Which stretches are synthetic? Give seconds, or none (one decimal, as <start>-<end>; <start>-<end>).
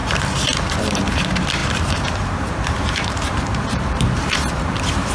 0.7-5.1